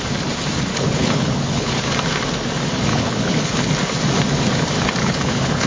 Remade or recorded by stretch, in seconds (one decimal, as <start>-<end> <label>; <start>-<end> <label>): 0.0-0.7 recorded; 0.7-1.8 remade; 1.8-2.9 recorded; 2.9-3.7 remade; 3.7-5.0 recorded; 5.0-5.7 remade